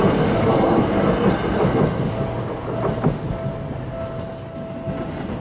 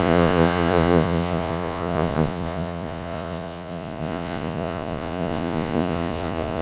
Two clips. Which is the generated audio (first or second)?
second